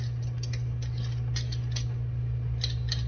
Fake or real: real